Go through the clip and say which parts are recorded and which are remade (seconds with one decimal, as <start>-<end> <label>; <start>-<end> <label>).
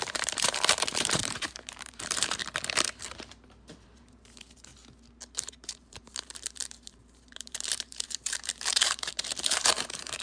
0.0-2.4 remade; 2.4-3.3 recorded; 3.3-4.7 remade; 4.7-5.5 recorded; 5.5-10.2 remade